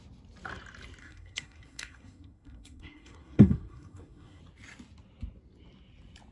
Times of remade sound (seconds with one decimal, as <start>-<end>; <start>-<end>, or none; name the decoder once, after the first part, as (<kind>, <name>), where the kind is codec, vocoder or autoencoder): 1.0-4.4 (codec, SNAC)